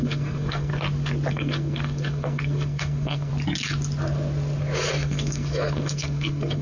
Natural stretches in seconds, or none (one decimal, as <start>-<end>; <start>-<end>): 0.7-1.3; 3.3-4.9